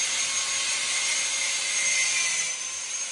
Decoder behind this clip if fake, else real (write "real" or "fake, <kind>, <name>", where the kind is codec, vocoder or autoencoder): real